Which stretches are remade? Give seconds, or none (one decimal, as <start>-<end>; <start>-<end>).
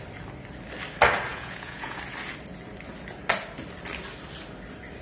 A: 1.3-2.0